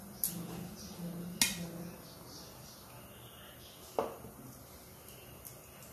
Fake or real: real